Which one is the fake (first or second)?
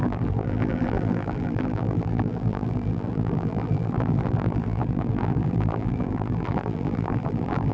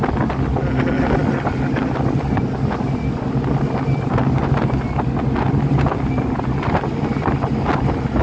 first